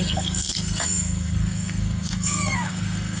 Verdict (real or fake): fake